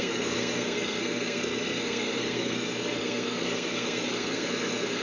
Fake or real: fake